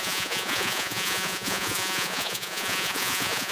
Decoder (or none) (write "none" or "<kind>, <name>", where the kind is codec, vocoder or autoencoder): vocoder, Vocos